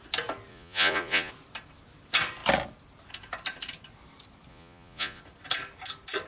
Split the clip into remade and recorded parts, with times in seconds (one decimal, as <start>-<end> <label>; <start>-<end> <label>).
0.0-0.5 recorded; 0.5-1.3 remade; 1.3-4.5 recorded; 4.5-5.2 remade; 5.2-6.3 recorded